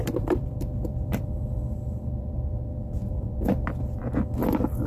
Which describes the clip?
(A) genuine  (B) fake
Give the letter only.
B